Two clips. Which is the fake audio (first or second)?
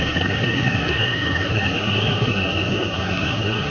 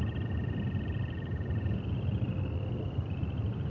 first